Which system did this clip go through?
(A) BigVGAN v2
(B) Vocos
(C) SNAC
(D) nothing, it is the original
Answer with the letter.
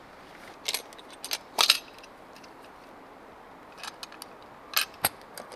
D